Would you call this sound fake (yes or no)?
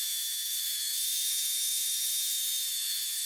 yes